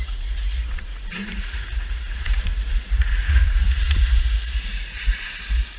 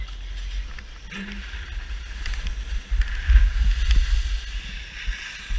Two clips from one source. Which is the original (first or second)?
second